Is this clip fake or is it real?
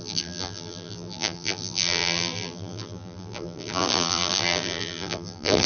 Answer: fake